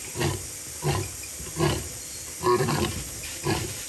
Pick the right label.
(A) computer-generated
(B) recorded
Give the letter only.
B